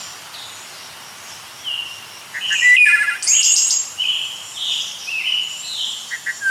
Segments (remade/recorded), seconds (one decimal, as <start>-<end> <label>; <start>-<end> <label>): 0.0-3.2 recorded; 3.2-6.5 remade